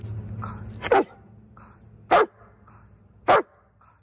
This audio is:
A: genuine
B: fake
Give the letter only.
A